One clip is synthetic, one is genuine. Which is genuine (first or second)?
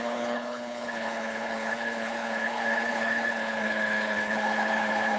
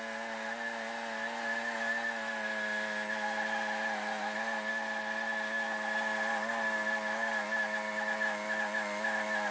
second